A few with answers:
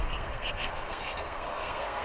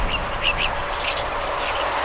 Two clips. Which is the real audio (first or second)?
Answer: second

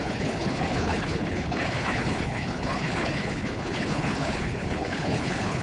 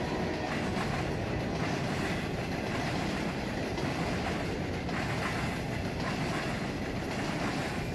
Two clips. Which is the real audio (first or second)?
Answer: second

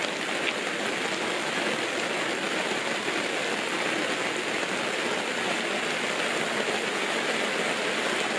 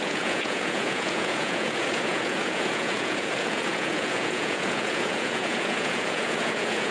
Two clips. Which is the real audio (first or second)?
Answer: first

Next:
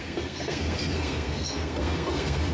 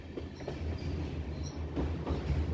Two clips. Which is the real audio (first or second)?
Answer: second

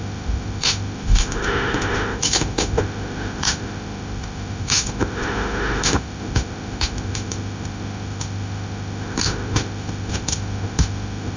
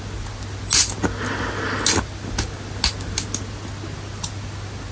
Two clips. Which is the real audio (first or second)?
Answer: second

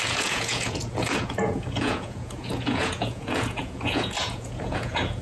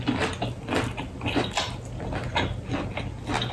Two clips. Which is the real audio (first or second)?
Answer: second